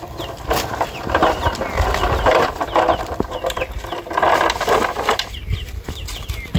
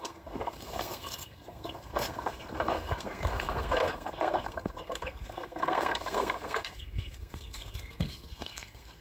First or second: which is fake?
second